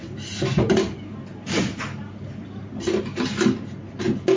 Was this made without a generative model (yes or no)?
yes